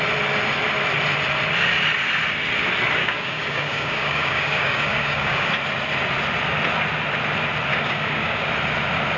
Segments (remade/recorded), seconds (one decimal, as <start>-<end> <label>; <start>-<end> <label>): 0.0-3.0 recorded; 3.0-5.5 remade; 5.5-7.7 recorded; 7.7-8.5 remade; 8.5-9.2 recorded